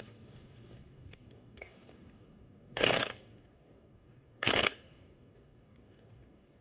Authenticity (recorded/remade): remade